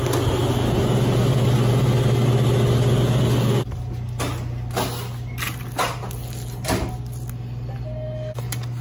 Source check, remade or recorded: recorded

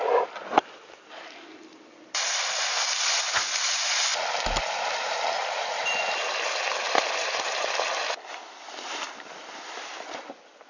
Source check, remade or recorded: remade